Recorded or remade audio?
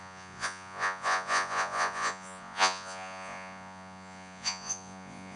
remade